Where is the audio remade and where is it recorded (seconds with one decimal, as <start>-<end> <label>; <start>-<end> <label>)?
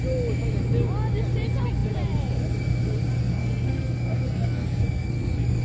0.0-3.2 recorded; 3.2-5.6 remade